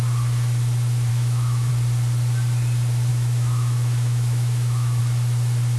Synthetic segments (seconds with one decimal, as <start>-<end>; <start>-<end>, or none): 1.1-1.7; 3.1-5.0